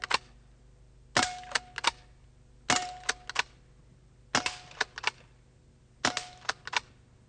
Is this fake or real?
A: real